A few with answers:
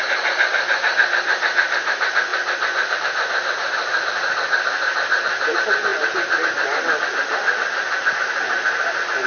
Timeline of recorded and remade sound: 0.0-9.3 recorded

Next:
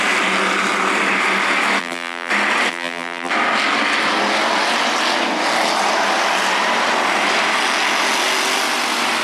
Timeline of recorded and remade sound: 0.0-1.8 recorded; 1.8-2.3 remade; 2.3-2.7 recorded; 2.7-3.3 remade; 3.3-9.2 recorded

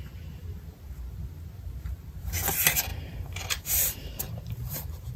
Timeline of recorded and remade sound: 0.0-2.9 recorded; 2.9-5.2 remade

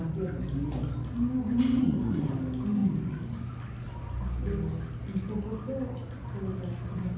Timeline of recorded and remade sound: 0.0-1.8 recorded; 1.8-2.3 remade; 2.3-7.2 recorded